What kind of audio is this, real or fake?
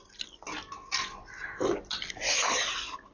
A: real